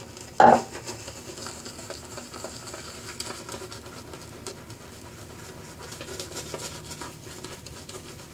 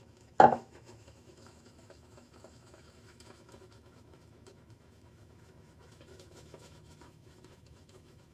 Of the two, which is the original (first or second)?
first